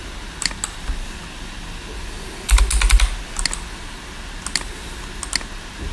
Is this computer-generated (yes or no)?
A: no